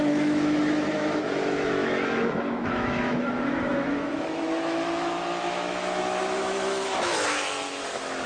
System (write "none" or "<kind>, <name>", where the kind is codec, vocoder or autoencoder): autoencoder, DAC-VAE